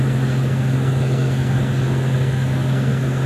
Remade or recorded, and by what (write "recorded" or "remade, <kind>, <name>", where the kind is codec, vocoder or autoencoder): remade, codec, SNAC